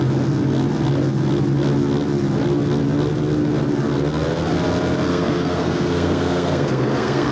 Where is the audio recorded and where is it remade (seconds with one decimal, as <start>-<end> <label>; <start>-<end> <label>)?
0.0-5.1 recorded; 5.1-7.3 remade

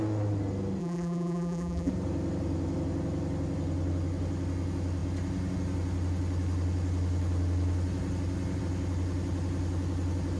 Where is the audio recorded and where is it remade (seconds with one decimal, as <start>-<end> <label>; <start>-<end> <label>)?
0.0-0.8 recorded; 0.8-1.9 remade; 1.9-10.4 recorded

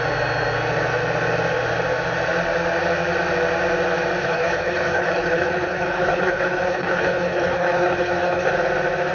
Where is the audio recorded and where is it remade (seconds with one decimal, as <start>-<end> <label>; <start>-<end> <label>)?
0.0-4.2 recorded; 4.2-8.5 remade; 8.5-9.1 recorded

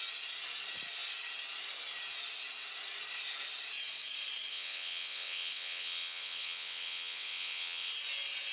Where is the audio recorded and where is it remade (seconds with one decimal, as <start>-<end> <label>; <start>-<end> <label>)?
0.0-4.5 recorded; 4.5-7.9 remade; 7.9-8.5 recorded

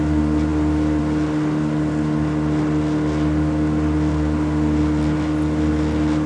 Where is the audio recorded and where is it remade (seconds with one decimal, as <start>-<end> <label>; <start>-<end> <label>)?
0.0-6.3 recorded

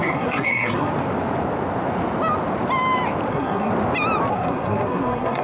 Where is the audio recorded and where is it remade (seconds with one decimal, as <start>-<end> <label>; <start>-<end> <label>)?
0.0-0.9 remade; 0.9-3.3 recorded; 3.3-3.7 remade; 3.7-4.3 recorded; 4.3-5.4 remade

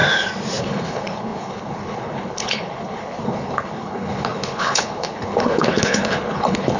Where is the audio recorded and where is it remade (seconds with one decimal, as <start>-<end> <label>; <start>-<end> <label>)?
0.0-0.6 recorded; 0.6-6.8 remade